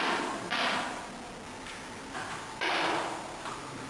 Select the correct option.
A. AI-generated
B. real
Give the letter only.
B